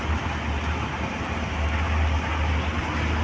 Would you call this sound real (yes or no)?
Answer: yes